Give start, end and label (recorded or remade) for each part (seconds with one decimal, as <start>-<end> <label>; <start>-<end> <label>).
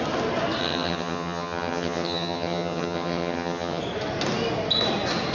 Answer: 0.0-0.6 recorded; 0.6-3.8 remade; 3.8-5.3 recorded